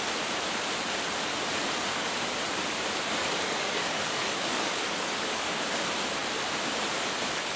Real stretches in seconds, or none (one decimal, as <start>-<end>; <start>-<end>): 0.0-3.2; 5.6-7.6